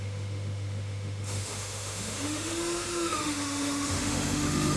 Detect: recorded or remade remade